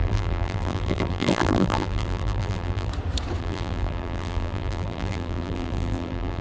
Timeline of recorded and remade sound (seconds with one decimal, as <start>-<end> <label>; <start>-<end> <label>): 0.0-2.9 remade; 2.9-3.4 recorded; 3.4-6.4 remade